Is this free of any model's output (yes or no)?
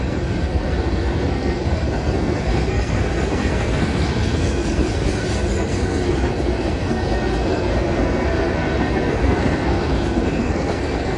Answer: no